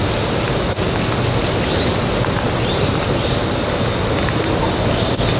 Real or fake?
real